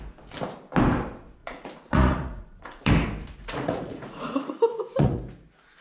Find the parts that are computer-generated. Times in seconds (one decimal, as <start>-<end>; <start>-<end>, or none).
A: 1.4-2.9; 3.4-5.2